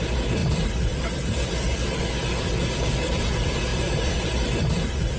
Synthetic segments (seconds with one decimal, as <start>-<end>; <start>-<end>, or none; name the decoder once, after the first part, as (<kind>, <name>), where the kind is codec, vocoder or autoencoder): 0.0-5.2 (vocoder, BigVGAN v2)